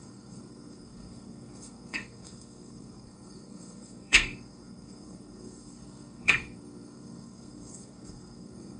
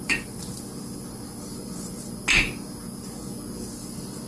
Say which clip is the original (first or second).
second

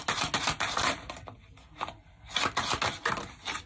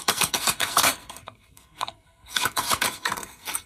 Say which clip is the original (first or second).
first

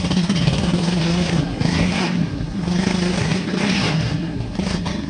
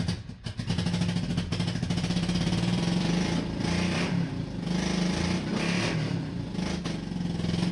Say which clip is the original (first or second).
second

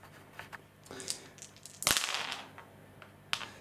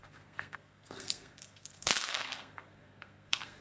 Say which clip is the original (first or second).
first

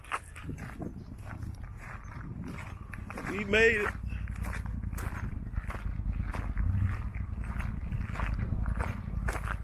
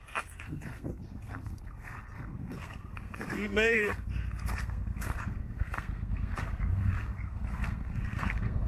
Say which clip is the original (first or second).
first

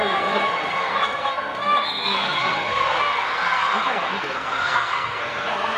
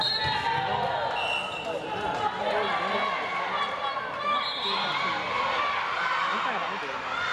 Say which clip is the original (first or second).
second